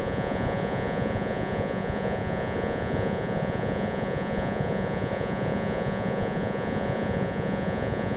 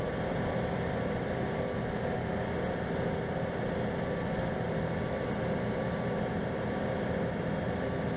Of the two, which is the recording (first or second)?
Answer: second